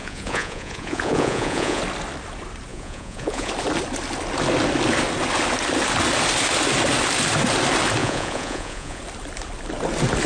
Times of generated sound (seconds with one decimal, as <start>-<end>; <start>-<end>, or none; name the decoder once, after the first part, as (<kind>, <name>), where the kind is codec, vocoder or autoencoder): 0.0-1.8 (vocoder, Vocos); 2.7-3.5; 8.0-9.0